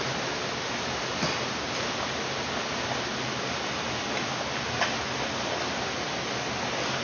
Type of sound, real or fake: real